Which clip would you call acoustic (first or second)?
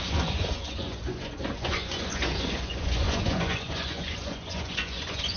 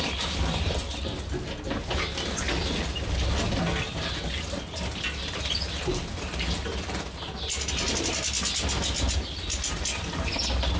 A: second